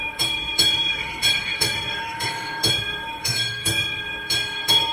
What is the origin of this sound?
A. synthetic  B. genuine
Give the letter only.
A